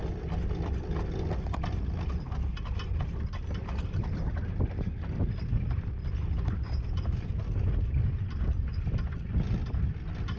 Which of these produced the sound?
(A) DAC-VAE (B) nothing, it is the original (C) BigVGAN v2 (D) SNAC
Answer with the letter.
B